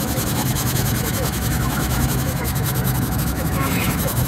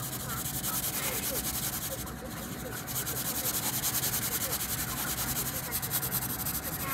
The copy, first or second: first